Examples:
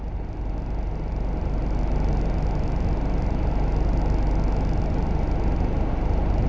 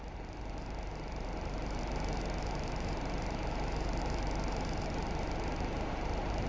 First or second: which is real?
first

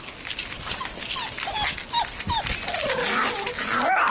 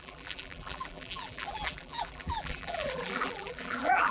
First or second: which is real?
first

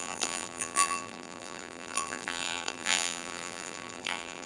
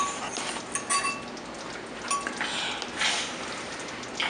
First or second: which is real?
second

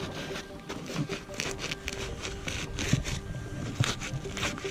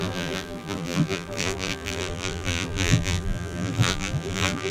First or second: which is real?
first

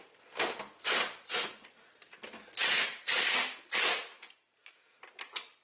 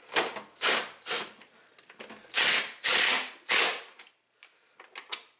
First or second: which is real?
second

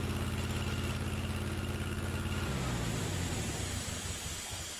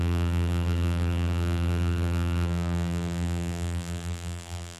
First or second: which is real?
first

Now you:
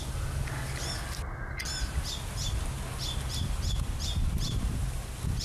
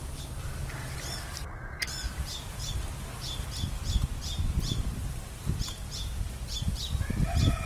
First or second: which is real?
first